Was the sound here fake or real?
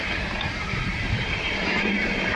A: fake